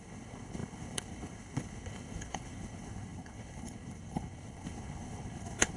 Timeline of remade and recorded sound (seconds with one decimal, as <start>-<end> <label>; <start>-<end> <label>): 0.0-5.8 remade